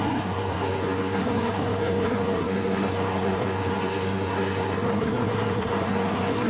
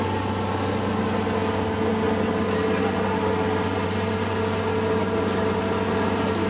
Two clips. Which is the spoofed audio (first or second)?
first